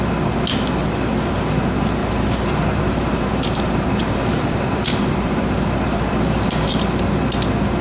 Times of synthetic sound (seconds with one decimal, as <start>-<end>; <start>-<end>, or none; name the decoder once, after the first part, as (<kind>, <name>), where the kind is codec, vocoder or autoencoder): 2.0-6.7 (vocoder, BigVGAN v2)